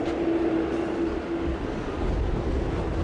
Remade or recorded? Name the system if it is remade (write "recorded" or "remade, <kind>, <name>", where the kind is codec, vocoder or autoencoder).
recorded